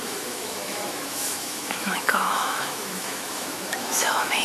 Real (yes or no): no